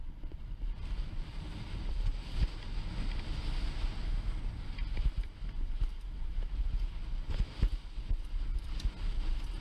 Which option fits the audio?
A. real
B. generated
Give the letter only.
A